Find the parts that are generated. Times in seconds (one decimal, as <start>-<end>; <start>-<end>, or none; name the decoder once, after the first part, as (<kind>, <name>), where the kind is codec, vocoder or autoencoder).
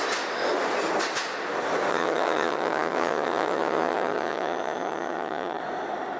1.9-5.6 (vocoder, HiFi-GAN)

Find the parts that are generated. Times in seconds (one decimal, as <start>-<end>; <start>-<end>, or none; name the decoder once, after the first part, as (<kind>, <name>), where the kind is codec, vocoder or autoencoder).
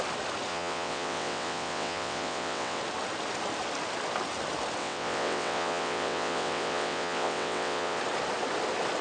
0.5-2.8 (vocoder, WaveNeXt); 4.8-8.0